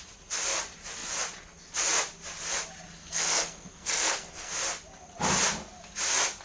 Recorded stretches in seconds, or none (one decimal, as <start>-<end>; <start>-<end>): 0.0-3.0; 4.5-6.4